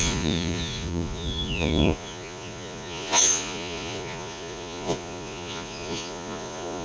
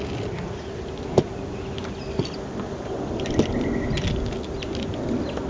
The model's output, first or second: first